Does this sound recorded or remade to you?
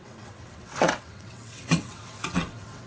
remade